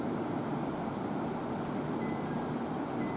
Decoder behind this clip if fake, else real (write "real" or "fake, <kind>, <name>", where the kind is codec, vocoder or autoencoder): real